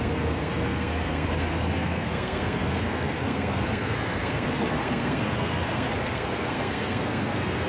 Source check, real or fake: fake